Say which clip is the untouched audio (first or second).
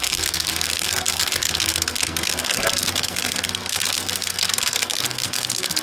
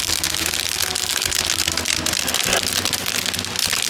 second